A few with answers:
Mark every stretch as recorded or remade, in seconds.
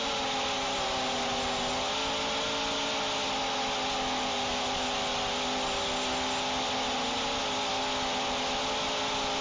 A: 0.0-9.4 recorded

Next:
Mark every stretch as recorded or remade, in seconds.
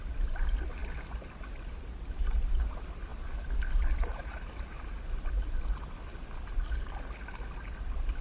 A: 0.0-8.2 recorded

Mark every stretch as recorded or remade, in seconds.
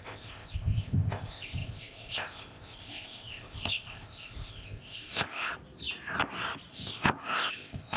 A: 0.0-5.5 remade; 5.5-6.7 recorded; 6.7-8.0 remade